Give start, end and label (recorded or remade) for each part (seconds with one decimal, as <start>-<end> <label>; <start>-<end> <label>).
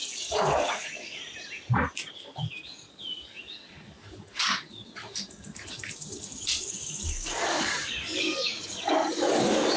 0.0-1.2 remade; 1.2-2.1 recorded; 2.1-9.8 remade